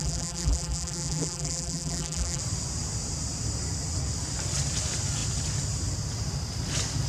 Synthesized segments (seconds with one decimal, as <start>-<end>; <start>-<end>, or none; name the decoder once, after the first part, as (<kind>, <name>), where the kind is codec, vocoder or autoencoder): 0.0-2.4 (vocoder, BigVGAN v2)